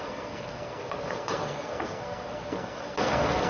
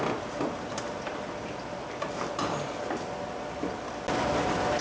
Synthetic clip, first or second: first